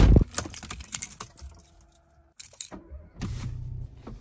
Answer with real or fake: real